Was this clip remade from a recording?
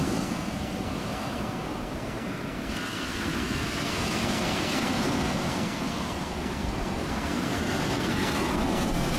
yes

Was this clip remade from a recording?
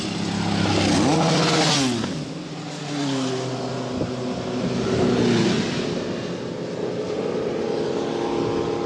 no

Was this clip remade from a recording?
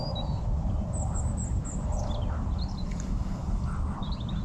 no